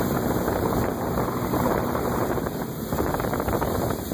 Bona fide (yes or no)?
yes